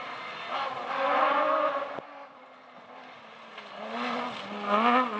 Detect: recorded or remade recorded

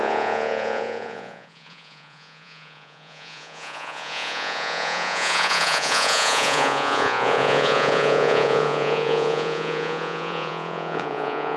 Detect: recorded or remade remade